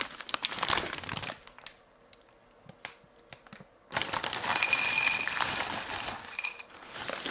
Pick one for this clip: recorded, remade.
recorded